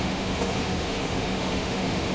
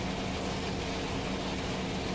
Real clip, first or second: second